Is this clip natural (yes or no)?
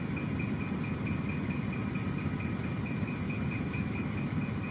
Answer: yes